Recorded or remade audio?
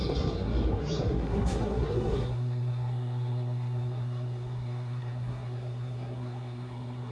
remade